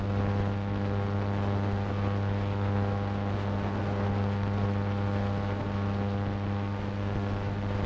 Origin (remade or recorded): recorded